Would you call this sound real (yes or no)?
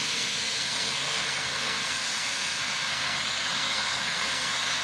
no